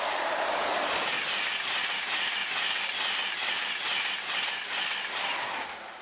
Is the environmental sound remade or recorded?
recorded